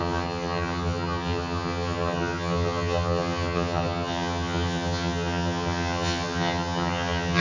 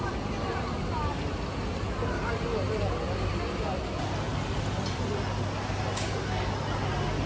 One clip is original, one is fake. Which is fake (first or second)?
first